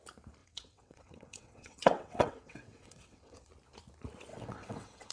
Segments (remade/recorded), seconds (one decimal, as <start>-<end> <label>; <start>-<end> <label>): 0.0-0.4 recorded; 0.4-3.5 remade; 3.5-4.3 recorded; 4.3-5.1 remade